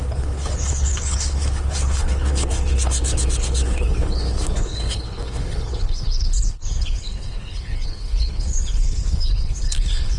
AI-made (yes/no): yes